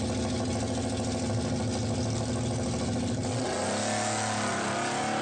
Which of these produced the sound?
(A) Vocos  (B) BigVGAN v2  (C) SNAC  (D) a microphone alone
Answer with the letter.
D